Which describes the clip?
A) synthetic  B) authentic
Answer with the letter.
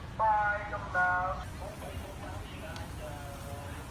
B